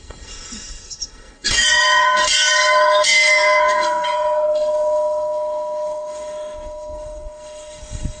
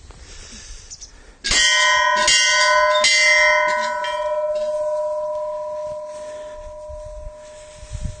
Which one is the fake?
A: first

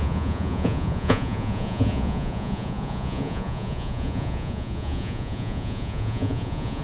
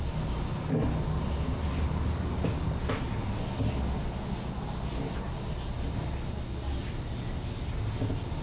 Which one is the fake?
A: first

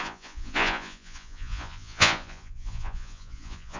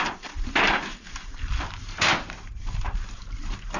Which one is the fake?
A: first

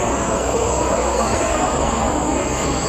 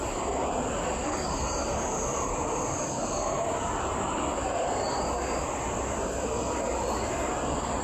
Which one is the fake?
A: first